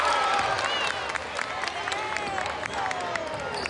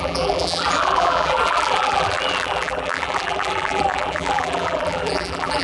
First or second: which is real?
first